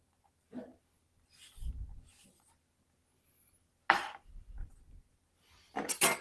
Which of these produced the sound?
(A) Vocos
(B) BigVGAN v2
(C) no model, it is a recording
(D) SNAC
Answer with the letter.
C